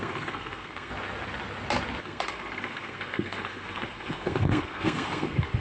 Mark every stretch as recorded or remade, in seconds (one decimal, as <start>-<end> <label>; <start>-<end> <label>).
0.0-0.9 remade; 0.9-2.0 recorded; 2.0-5.6 remade